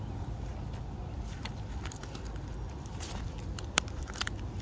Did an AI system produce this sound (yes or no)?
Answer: no